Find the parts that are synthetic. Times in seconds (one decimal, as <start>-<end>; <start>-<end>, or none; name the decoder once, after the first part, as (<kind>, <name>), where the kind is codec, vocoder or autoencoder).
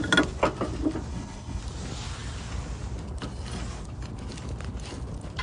1.1-1.6 (codec, HILCodec)